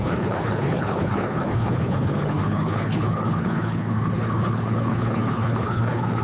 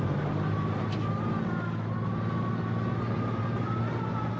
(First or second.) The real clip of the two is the second